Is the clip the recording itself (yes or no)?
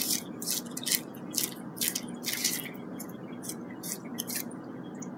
yes